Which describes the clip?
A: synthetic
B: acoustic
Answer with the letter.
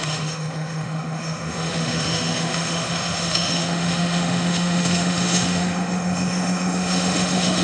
A